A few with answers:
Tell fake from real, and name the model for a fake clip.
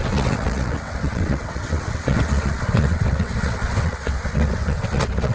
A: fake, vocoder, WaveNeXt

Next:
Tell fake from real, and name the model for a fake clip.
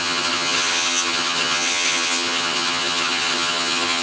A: fake, vocoder, HiFi-GAN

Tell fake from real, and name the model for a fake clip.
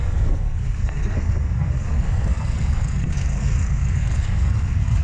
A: fake, codec, SNAC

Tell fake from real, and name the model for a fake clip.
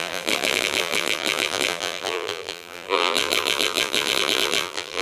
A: fake, vocoder, BigVGAN v2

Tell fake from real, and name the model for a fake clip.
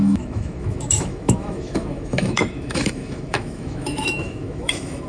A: fake, autoencoder, DAC-VAE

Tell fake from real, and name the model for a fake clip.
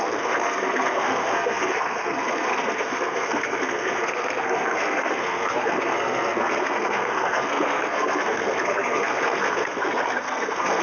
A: fake, codec, SNAC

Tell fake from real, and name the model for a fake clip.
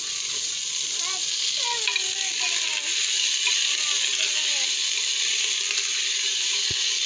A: real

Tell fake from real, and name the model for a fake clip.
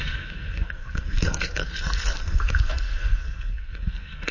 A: fake, codec, SNAC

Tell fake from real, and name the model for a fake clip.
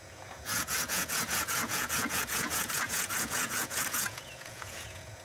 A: fake, vocoder, Vocos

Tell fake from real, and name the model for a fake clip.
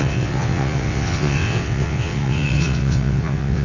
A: fake, vocoder, WaveNeXt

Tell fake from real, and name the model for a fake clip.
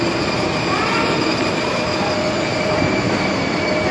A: fake, vocoder, BigVGAN v2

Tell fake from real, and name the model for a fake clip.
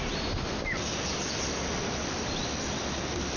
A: real